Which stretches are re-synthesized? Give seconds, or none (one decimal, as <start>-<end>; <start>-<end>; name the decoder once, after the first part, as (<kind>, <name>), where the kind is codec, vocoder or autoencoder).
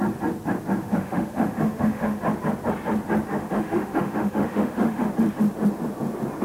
0.8-2.2 (autoencoder, DAC-VAE); 3.3-5.1